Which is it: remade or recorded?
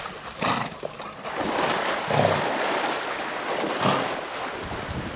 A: recorded